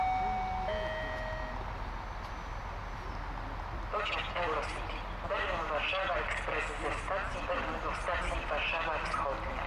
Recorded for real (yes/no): yes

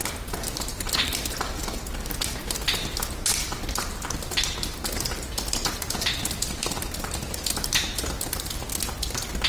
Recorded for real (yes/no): yes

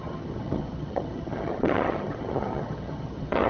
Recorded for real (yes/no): no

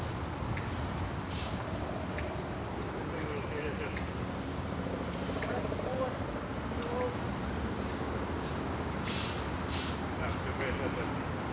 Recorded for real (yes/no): yes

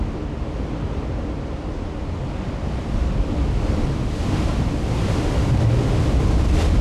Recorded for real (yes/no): yes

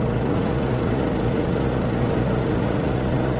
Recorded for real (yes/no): no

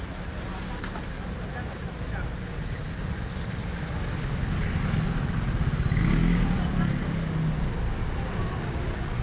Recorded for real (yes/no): yes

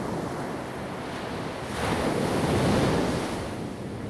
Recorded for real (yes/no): yes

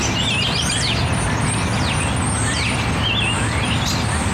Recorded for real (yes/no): yes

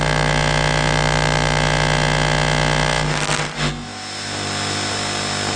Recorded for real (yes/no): yes